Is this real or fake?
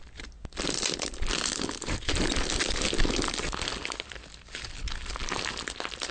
real